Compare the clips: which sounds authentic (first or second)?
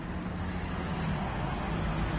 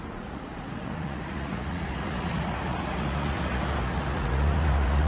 first